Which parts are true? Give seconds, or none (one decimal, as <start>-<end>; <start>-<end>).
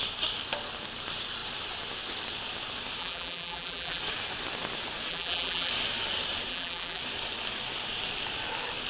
0.0-3.0; 4.0-5.1; 5.7-6.5; 7.0-8.9